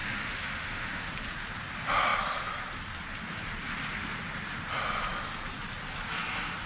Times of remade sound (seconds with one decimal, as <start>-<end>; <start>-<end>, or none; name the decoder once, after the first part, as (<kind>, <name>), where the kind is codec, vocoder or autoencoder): 0.0-1.1 (autoencoder, DAC-VAE)